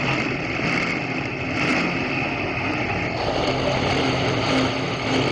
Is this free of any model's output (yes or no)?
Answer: yes